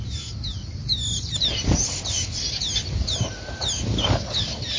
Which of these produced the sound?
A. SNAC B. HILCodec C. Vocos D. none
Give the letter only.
D